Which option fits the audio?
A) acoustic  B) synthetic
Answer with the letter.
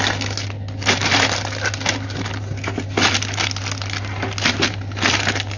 A